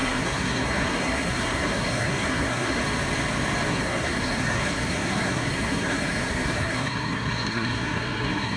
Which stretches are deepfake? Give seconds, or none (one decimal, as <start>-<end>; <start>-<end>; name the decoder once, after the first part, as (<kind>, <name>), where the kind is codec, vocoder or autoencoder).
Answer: 0.0-2.8 (codec, SNAC); 3.7-8.6